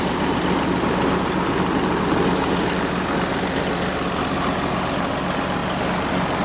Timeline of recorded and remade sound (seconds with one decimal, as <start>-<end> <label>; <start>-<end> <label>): 0.0-6.4 recorded